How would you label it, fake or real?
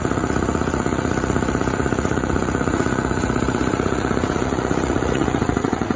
fake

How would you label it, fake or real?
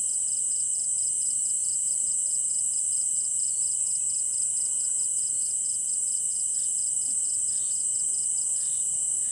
fake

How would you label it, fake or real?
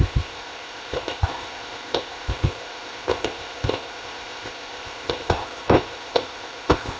fake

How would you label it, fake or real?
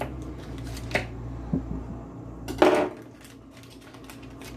real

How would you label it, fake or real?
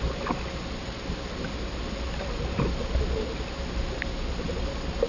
real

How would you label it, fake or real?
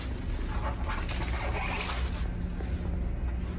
real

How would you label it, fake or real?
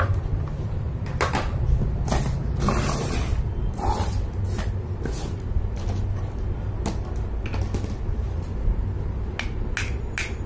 real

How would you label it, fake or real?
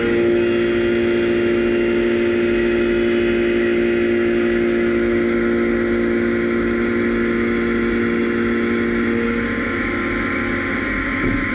real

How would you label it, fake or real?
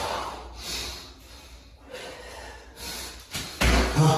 real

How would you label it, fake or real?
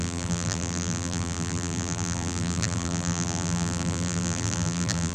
fake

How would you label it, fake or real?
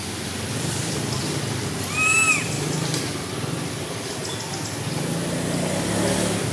real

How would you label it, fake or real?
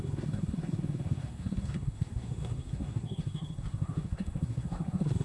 fake